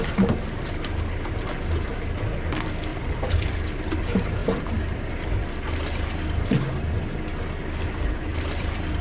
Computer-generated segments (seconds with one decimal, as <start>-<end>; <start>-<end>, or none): 2.9-3.9; 4.4-5.1; 8.3-9.0